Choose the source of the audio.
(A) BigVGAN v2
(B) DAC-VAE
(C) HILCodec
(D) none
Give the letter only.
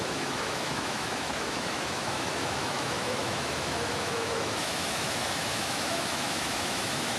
B